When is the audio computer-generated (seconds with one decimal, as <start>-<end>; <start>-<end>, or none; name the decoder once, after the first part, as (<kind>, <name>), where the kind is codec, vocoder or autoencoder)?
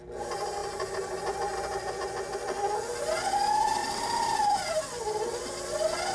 0.6-1.9 (vocoder, BigVGAN v2); 3.8-4.8